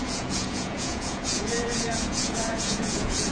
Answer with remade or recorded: remade